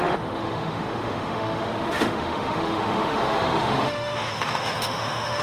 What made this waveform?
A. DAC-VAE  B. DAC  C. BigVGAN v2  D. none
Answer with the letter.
A